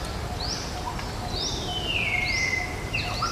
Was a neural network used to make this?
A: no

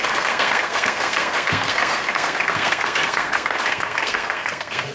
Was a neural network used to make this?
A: yes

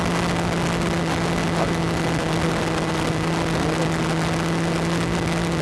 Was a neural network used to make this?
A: no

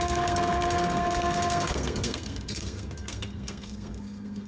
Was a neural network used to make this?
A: yes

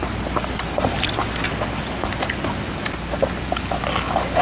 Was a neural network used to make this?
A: no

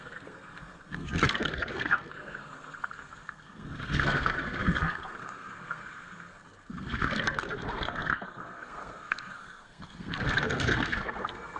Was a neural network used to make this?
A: yes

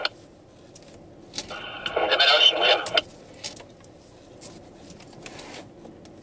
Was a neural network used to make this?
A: no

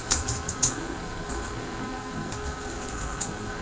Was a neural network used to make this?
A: yes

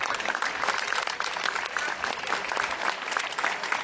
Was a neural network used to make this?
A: no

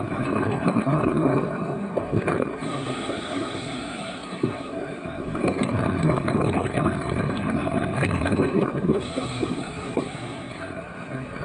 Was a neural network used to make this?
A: yes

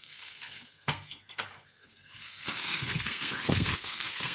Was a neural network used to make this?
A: yes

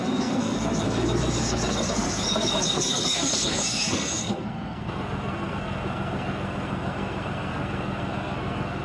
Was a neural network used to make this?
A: yes